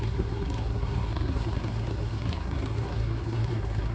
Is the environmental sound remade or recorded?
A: remade